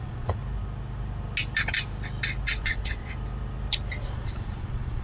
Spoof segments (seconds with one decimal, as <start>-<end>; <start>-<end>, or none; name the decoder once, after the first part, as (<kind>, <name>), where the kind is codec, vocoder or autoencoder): 0.0-0.4 (vocoder, Vocos); 2.6-3.1; 4.0-5.0